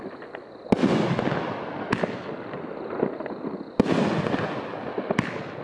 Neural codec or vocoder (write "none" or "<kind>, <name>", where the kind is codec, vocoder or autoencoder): none